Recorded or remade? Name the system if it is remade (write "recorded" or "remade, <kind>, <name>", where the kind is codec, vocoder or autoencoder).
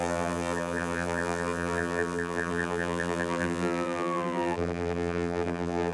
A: remade, vocoder, BigVGAN v2